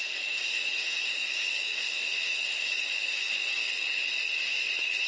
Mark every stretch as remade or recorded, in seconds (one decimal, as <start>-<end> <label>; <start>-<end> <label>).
0.0-3.6 remade; 3.6-4.2 recorded; 4.2-5.1 remade